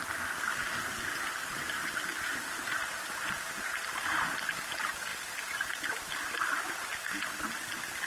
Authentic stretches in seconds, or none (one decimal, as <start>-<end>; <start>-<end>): 2.1-2.8; 5.1-8.1